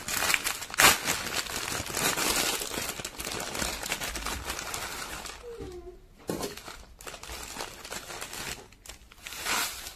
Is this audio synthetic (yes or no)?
no